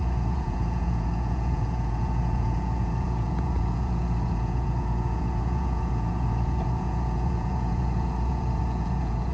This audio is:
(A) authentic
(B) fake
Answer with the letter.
B